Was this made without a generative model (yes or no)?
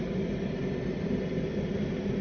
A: yes